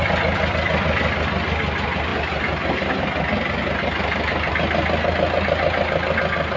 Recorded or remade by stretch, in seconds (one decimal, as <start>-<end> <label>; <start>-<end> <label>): 0.0-6.6 recorded